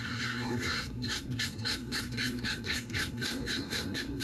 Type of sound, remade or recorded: remade